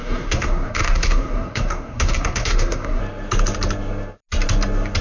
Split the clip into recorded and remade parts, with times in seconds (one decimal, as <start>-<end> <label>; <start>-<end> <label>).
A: 0.0-3.0 remade; 3.0-5.0 recorded